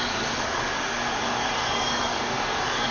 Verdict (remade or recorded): remade